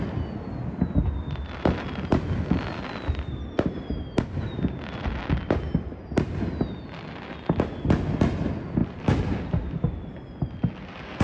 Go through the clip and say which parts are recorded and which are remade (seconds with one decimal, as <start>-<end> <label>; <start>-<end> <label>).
0.0-11.2 recorded

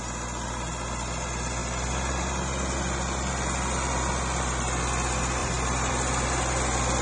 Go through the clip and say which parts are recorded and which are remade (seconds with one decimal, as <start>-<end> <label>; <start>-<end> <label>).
0.0-5.4 recorded; 5.4-5.9 remade; 5.9-7.0 recorded

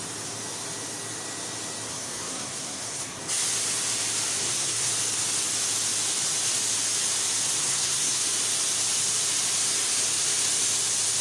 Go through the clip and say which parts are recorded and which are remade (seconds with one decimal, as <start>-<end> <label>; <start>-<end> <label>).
0.0-1.9 recorded; 1.9-3.2 remade; 3.2-4.4 recorded; 4.4-4.9 remade; 4.9-7.6 recorded; 7.6-8.2 remade; 8.2-11.2 recorded